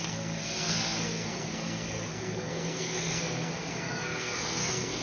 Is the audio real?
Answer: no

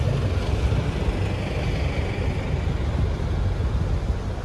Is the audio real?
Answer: yes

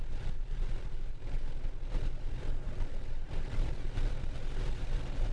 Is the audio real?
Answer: yes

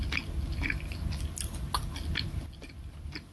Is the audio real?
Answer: yes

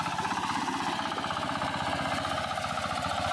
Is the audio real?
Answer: yes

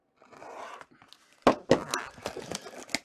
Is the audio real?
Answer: yes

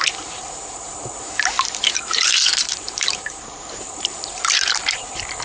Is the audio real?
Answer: no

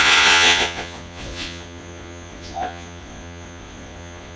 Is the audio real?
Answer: no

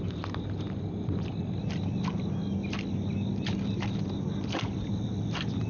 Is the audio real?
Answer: yes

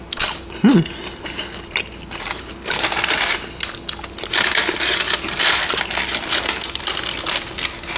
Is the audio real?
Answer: yes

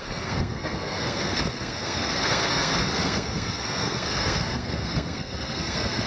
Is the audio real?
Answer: no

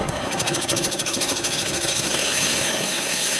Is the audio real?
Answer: no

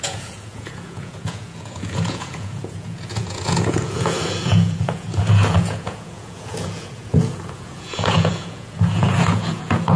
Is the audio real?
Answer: no